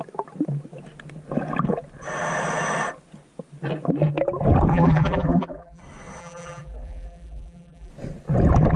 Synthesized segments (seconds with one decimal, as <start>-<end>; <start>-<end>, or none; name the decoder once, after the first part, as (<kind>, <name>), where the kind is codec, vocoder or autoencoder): 4.7-5.8 (vocoder, BigVGAN v2); 6.2-7.9